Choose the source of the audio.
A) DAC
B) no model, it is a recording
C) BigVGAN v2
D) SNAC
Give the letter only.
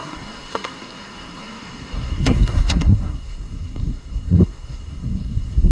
D